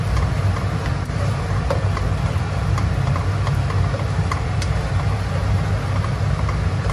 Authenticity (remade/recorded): recorded